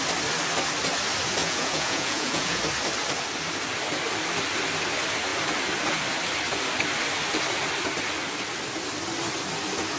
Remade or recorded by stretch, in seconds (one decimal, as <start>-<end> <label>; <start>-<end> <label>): 0.0-1.4 recorded; 1.4-2.6 remade; 2.6-10.0 recorded